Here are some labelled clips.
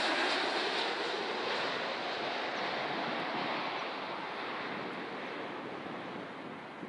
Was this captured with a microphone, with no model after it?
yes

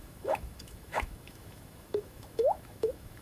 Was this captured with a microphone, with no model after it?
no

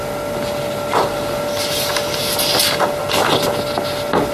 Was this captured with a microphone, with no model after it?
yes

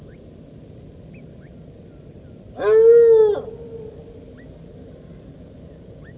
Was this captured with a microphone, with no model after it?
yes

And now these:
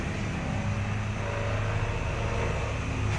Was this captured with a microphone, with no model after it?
yes